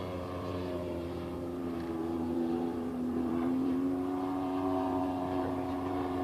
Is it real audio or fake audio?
fake